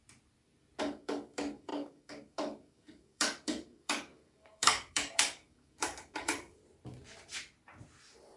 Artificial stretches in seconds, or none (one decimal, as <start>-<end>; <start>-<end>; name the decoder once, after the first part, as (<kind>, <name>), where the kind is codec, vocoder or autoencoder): 0.8-6.6 (codec, DAC)